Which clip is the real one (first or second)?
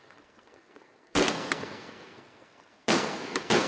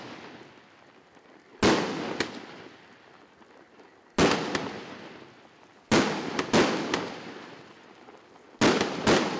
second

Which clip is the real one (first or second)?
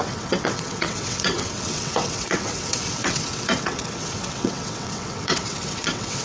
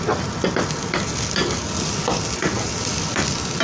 second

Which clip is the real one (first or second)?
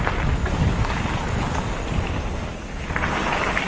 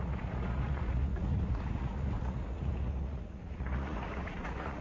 first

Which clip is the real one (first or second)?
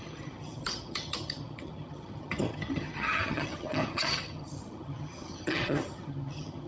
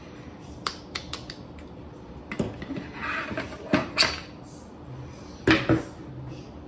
second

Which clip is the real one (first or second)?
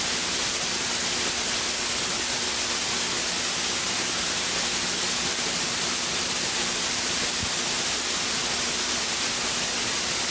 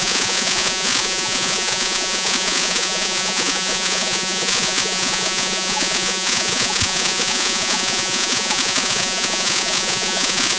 first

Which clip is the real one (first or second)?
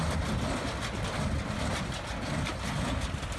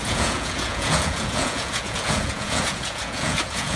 first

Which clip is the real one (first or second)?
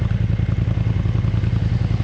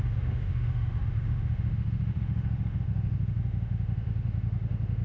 first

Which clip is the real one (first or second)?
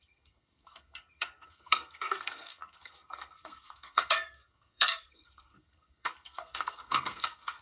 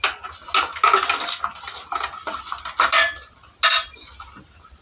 second